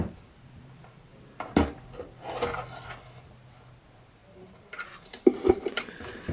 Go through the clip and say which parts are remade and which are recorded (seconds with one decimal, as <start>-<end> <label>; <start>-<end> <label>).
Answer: 0.0-1.1 recorded; 1.1-1.7 remade; 1.7-4.2 recorded; 4.2-5.8 remade; 5.8-6.3 recorded